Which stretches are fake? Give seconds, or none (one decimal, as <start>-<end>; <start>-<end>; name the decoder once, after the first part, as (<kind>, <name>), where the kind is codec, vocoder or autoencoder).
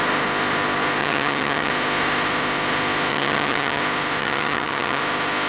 1.0-1.7 (vocoder, HiFi-GAN); 3.1-3.8; 4.2-5.0